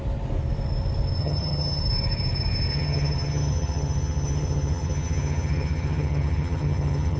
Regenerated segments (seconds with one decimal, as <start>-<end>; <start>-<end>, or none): 1.2-1.8; 2.7-7.2